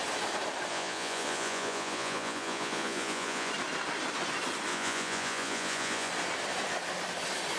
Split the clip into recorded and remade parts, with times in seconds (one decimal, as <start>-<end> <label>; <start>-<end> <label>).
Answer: 0.0-0.7 recorded; 0.7-3.5 remade; 3.5-4.7 recorded; 4.7-6.1 remade; 6.1-7.6 recorded